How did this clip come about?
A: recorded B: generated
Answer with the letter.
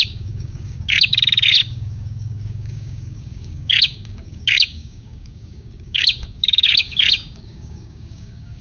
B